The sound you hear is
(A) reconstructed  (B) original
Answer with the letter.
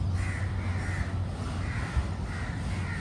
B